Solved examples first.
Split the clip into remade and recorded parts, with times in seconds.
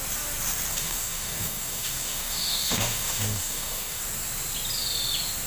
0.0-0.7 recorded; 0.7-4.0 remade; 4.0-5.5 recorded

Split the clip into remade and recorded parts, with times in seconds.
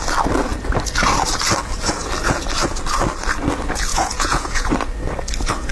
0.0-3.9 recorded; 3.9-4.7 remade; 4.7-5.7 recorded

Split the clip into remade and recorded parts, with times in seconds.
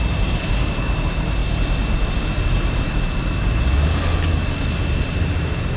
0.0-1.4 remade; 1.4-4.9 recorded; 4.9-5.8 remade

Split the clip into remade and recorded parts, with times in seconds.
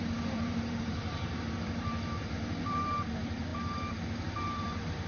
0.0-5.1 remade